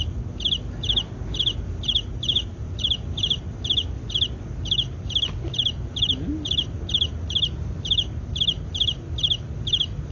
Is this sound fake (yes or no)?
no